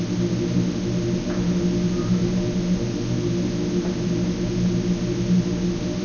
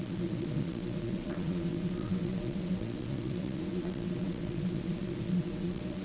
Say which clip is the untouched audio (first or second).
first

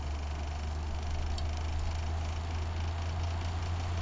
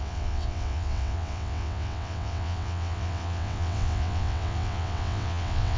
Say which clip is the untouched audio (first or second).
first